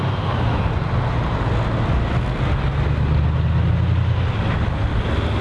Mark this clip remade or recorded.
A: recorded